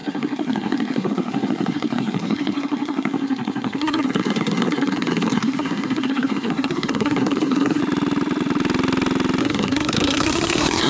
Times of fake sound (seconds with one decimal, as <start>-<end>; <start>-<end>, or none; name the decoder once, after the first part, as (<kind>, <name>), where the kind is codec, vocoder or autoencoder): 0.0-7.8 (codec, SNAC); 9.4-10.9